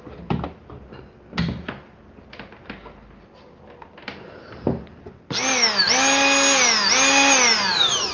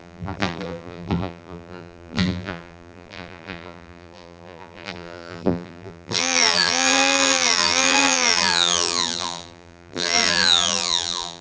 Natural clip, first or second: first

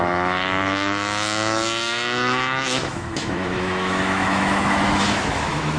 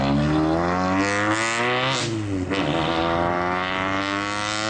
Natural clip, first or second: second